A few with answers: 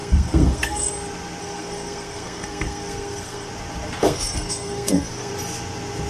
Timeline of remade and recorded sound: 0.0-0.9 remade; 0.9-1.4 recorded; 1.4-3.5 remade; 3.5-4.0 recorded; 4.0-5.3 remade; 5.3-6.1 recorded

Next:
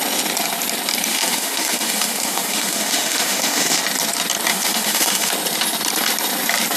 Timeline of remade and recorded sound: 0.0-1.1 recorded; 1.1-3.8 remade; 3.8-4.5 recorded; 4.5-5.3 remade; 5.3-6.8 recorded